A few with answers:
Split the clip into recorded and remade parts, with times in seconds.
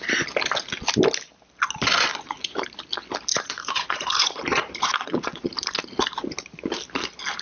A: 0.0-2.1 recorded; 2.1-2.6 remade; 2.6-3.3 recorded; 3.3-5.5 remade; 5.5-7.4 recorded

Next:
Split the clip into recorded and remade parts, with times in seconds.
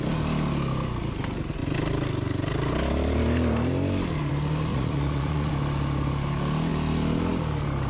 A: 0.0-4.7 recorded; 4.7-5.5 remade; 5.5-7.9 recorded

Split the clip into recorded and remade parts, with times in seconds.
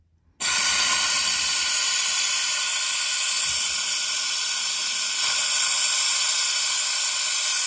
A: 0.0-7.7 recorded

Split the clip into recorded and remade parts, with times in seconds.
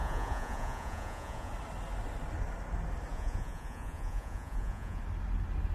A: 0.0-1.5 remade; 1.5-3.1 recorded; 3.1-5.0 remade; 5.0-5.7 recorded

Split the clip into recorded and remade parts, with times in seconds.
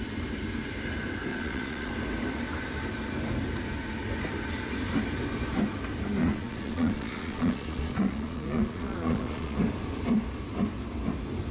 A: 0.0-1.3 recorded; 1.3-1.9 remade; 1.9-6.2 recorded; 6.2-9.6 remade; 9.6-11.5 recorded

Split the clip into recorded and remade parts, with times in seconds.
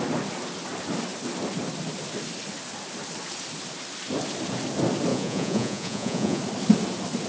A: 0.0-5.1 recorded; 5.1-6.4 remade; 6.4-7.3 recorded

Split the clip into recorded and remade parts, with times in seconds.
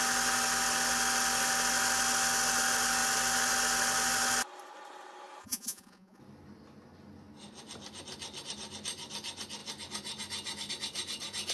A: 0.0-5.4 recorded; 5.4-6.2 remade; 6.2-11.5 recorded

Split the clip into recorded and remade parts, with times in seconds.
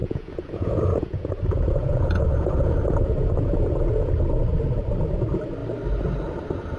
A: 0.0-4.1 remade; 4.1-6.8 recorded